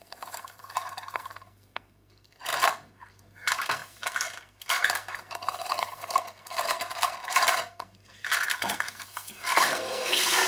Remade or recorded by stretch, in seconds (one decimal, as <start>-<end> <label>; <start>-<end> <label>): 0.0-10.5 remade